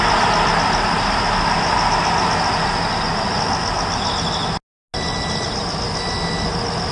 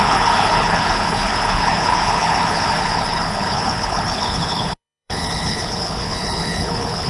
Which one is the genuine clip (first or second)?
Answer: first